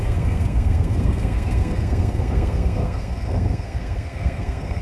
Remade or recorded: remade